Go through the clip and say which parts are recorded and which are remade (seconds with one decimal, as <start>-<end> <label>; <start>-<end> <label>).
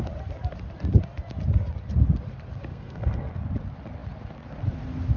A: 0.0-2.7 recorded; 2.7-3.4 remade; 3.4-5.2 recorded